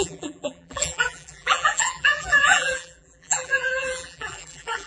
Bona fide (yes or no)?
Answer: no